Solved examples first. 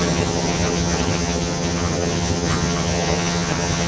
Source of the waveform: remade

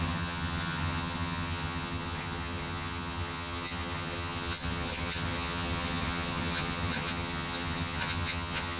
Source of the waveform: remade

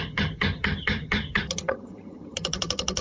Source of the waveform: remade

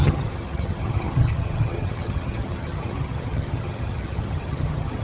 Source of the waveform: remade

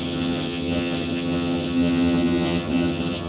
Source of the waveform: remade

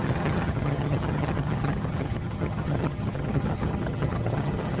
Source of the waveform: remade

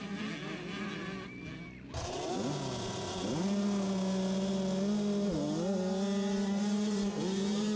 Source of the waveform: recorded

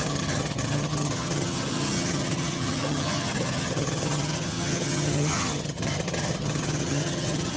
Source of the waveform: remade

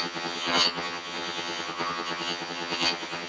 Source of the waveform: remade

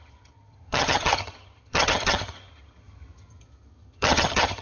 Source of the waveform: remade